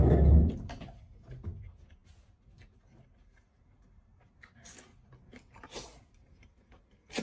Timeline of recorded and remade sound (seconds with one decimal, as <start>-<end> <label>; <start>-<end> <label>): 0.0-7.2 recorded

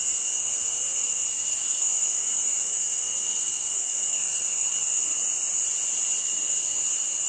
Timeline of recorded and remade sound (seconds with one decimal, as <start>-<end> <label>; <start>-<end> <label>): 0.0-5.2 remade; 5.2-6.2 recorded; 6.2-7.3 remade

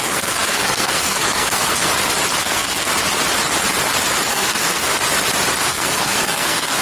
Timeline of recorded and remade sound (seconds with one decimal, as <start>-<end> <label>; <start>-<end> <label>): 0.0-1.9 remade; 1.9-2.4 recorded; 2.4-2.9 remade; 2.9-4.3 recorded; 4.3-4.9 remade; 4.9-5.6 recorded; 5.6-6.8 remade